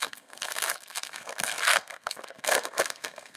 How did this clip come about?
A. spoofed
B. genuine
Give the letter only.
A